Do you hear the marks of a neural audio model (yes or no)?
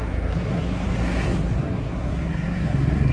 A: yes